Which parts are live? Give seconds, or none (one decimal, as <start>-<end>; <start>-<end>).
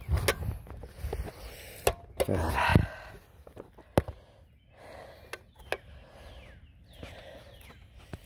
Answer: 0.0-8.3